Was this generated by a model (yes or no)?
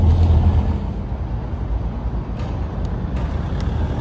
no